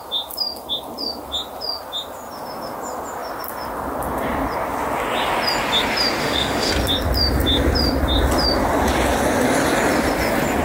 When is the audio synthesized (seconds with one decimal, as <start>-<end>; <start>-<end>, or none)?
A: 6.2-6.7